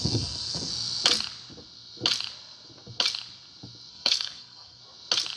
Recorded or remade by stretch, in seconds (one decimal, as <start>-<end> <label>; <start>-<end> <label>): 0.0-0.7 remade; 0.7-3.9 recorded; 3.9-4.8 remade; 4.8-5.4 recorded